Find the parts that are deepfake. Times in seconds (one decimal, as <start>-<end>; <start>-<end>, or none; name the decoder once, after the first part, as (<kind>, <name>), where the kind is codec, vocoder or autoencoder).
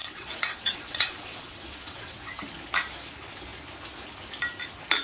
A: 0.0-2.3 (vocoder, WaveNeXt)